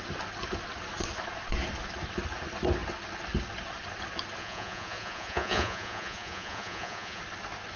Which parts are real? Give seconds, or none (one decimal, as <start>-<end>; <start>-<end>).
0.0-4.4; 7.2-7.8